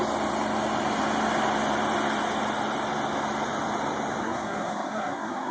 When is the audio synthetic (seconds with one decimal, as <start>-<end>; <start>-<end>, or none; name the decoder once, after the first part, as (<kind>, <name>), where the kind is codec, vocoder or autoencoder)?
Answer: 4.2-5.5 (codec, SNAC)